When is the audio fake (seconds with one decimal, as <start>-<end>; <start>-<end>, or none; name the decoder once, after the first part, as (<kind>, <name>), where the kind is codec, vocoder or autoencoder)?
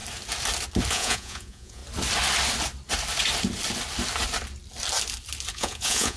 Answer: 0.9-1.8 (vocoder, Vocos); 5.5-6.2